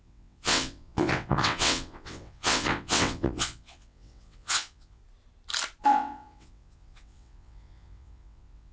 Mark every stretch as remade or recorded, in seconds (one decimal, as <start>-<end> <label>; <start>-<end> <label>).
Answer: 0.0-5.0 remade; 5.0-5.8 recorded; 5.8-8.7 remade